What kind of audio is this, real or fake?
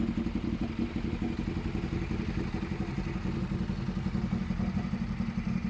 real